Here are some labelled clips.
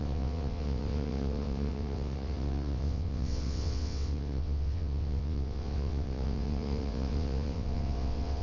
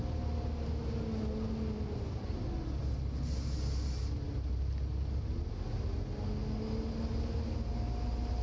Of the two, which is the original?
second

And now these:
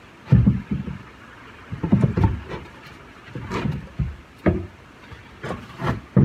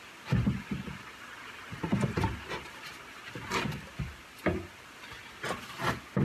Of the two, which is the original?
second